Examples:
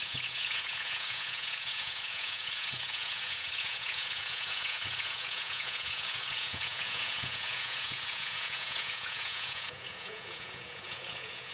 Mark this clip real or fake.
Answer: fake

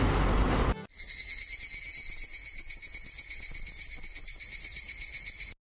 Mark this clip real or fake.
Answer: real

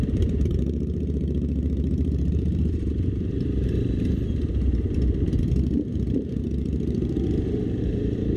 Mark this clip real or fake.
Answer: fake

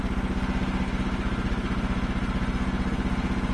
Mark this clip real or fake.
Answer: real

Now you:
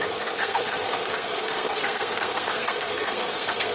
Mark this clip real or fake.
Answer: fake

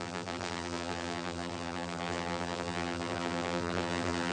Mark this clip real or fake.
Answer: fake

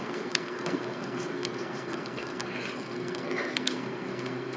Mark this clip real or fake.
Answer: fake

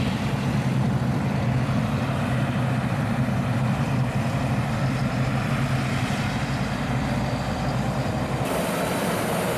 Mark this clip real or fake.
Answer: fake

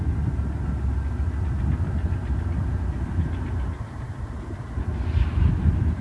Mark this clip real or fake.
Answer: real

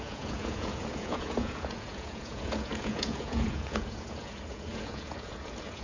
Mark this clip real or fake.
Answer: fake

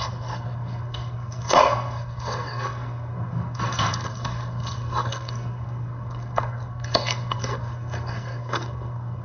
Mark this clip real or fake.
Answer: fake